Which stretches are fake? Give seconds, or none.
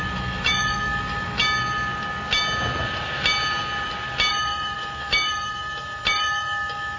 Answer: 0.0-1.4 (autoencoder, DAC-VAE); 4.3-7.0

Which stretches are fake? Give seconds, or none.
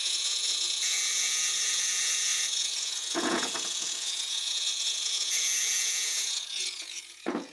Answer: 0.0-7.5 (vocoder, Vocos)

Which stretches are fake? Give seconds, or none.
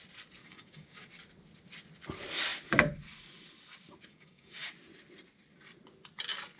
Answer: 0.4-1.1 (codec, DAC); 4.1-4.7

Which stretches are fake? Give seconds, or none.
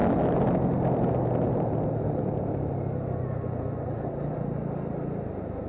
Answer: none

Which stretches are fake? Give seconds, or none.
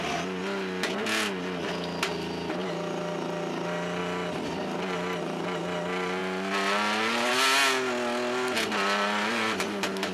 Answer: none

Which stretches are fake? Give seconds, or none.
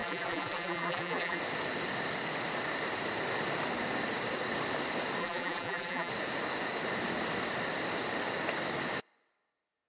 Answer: 0.0-1.4 (vocoder, BigVGAN v2); 5.2-6.1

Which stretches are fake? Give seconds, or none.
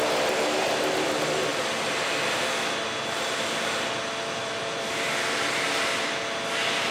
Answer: 1.5-5.6 (vocoder, BigVGAN v2)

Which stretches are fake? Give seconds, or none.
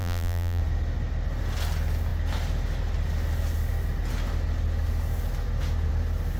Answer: 0.0-0.6 (vocoder, BigVGAN v2)